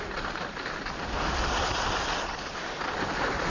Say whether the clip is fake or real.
real